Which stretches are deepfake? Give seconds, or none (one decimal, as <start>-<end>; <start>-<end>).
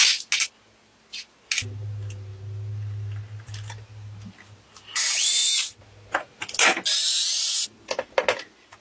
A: none